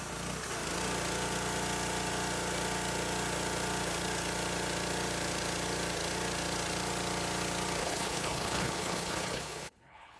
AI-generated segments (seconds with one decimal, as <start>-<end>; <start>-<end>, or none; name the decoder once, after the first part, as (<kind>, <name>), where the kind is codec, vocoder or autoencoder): 7.8-10.2 (codec, HILCodec)

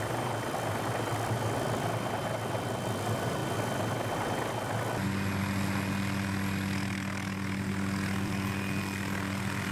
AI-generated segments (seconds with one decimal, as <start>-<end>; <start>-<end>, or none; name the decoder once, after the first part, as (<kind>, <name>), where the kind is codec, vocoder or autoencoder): none

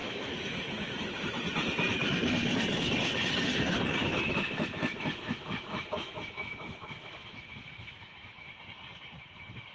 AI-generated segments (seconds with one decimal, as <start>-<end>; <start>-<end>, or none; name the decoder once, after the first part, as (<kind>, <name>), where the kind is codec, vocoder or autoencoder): 0.0-1.3 (autoencoder, DAC-VAE); 4.0-8.5